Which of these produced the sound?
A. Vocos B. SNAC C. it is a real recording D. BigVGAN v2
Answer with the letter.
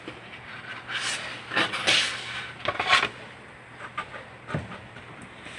D